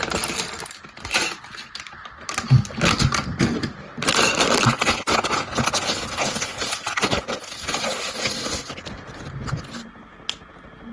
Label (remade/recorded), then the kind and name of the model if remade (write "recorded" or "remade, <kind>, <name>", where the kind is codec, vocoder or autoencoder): recorded